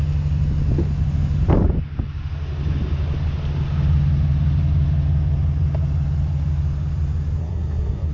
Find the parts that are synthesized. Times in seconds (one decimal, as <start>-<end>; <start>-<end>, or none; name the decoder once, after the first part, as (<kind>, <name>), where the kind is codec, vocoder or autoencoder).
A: 7.4-8.1 (codec, SNAC)